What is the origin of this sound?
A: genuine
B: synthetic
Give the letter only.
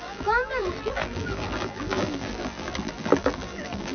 B